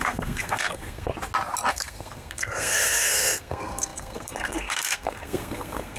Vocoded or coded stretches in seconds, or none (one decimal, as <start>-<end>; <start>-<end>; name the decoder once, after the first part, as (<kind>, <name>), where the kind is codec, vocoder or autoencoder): 0.0-1.1 (codec, SNAC); 1.7-6.0